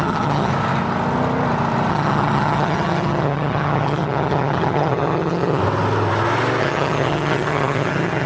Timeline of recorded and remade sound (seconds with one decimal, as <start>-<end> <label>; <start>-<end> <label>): 0.0-0.5 remade; 0.5-1.9 recorded; 1.9-5.6 remade; 5.6-6.6 recorded; 6.6-8.3 remade